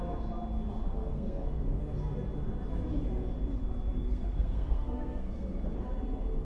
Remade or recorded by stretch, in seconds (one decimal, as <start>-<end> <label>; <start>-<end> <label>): 0.0-0.9 recorded; 0.9-1.8 remade; 1.8-4.0 recorded; 4.0-5.6 remade; 5.6-6.4 recorded